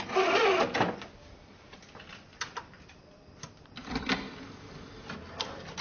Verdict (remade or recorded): remade